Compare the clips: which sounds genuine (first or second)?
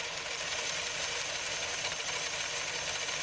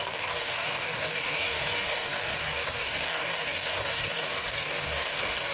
first